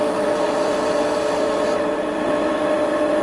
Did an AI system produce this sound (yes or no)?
no